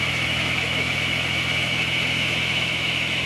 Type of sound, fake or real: fake